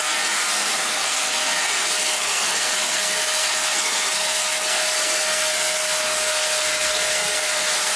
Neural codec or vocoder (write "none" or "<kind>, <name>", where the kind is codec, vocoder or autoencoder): codec, SNAC